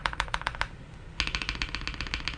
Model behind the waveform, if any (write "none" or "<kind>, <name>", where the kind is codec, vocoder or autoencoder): none